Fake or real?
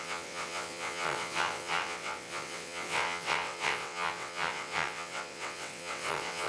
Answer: fake